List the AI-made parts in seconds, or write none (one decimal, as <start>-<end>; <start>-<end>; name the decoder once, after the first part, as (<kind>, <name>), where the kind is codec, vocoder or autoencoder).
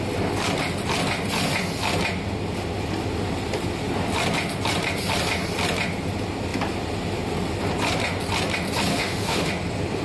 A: 8.9-9.5 (autoencoder, DAC-VAE)